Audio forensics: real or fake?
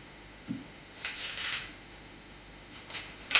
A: fake